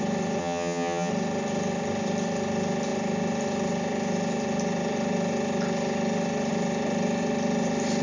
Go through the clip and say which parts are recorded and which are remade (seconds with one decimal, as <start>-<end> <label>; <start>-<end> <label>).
0.0-0.4 recorded; 0.4-1.1 remade; 1.1-8.0 recorded